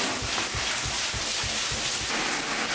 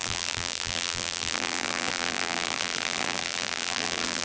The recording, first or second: first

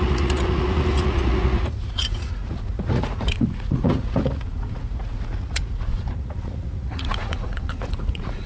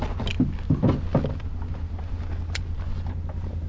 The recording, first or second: second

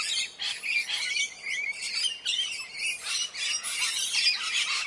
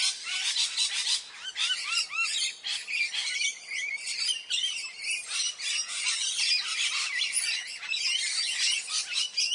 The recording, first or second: first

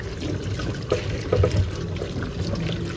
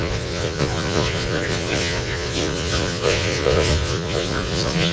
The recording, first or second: first